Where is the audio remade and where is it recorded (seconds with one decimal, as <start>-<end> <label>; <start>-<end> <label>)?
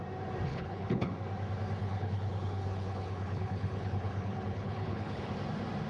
0.0-0.5 recorded; 0.5-1.1 remade; 1.1-1.8 recorded; 1.8-5.3 remade; 5.3-5.9 recorded